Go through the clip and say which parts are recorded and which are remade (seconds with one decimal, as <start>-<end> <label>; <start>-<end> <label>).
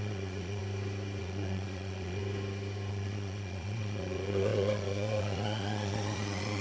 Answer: 0.0-0.6 remade; 0.6-1.2 recorded; 1.2-2.2 remade; 2.2-2.9 recorded; 2.9-6.6 remade